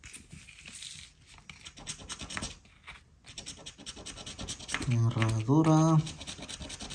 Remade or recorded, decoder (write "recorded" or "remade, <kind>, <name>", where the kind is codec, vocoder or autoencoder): recorded